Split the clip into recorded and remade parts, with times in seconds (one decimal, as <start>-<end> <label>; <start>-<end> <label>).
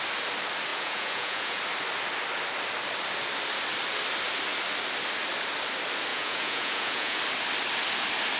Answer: 0.0-0.7 recorded; 0.7-1.6 remade; 1.6-6.1 recorded; 6.1-7.2 remade; 7.2-8.4 recorded